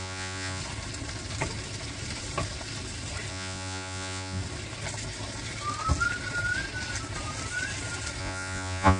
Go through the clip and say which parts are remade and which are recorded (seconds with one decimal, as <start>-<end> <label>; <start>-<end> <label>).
0.0-0.6 remade; 0.6-3.3 recorded; 3.3-4.4 remade; 4.4-8.2 recorded; 8.2-9.0 remade